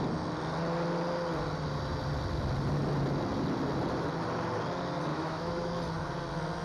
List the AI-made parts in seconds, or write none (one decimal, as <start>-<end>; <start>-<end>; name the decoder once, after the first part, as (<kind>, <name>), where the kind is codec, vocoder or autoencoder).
5.1-5.7 (autoencoder, DAC-VAE)